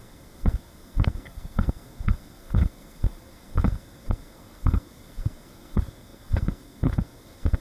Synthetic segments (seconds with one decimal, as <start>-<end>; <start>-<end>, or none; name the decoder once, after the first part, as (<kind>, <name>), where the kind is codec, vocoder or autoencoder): 0.0-7.6 (codec, SNAC)